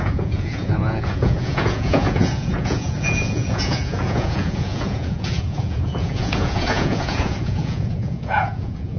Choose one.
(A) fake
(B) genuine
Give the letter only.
A